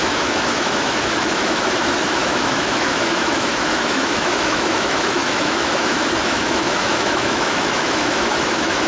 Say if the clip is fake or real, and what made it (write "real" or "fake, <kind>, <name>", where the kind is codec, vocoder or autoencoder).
fake, autoencoder, DAC-VAE